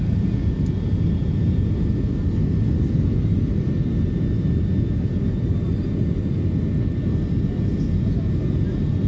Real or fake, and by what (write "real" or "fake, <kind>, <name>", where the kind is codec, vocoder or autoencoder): real